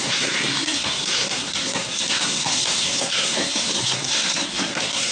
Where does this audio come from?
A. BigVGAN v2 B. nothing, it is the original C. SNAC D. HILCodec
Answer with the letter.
C